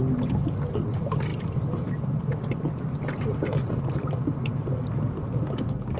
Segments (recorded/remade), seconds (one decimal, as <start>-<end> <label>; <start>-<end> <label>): 0.0-6.0 recorded